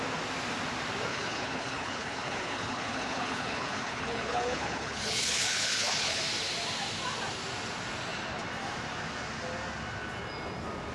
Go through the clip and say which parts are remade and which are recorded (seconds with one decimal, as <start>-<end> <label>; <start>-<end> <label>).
0.0-1.1 recorded; 1.1-6.2 remade; 6.2-10.9 recorded